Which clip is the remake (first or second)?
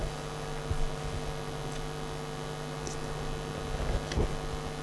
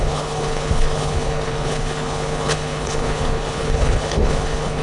second